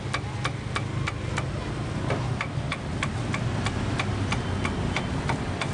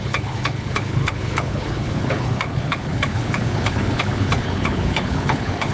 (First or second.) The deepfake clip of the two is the second